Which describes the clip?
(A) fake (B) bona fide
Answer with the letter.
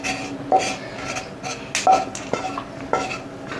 B